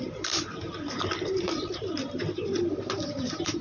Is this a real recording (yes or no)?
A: no